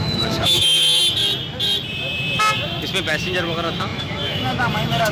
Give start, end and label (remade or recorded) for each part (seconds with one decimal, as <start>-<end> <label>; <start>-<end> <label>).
0.0-1.0 remade; 1.0-3.1 recorded; 3.1-5.1 remade